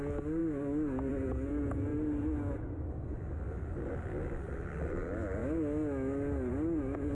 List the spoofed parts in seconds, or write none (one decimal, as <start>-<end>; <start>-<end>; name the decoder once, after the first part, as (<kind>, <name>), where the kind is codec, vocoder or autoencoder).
none